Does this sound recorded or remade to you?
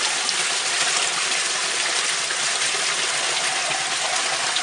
recorded